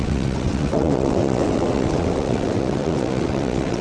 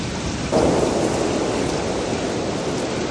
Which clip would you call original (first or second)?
second